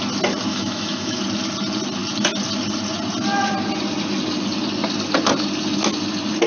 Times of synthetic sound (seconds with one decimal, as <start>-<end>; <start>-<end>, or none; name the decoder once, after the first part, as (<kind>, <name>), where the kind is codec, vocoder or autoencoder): 0.5-1.2 (autoencoder, DAC-VAE)